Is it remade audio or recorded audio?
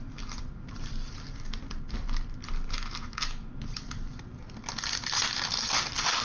recorded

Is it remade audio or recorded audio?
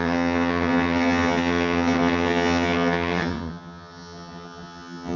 remade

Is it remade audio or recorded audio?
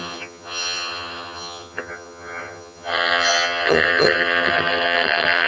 remade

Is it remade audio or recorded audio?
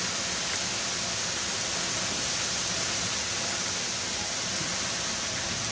recorded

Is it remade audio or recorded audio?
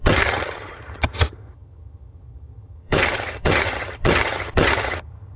remade